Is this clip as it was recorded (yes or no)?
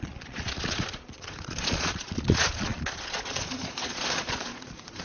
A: no